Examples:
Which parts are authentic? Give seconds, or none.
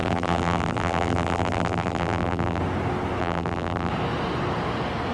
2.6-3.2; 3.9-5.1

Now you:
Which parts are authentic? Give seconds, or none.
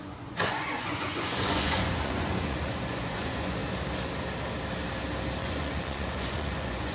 3.6-5.4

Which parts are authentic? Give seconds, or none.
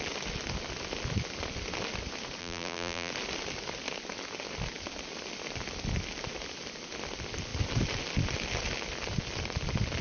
0.0-2.4; 3.1-10.0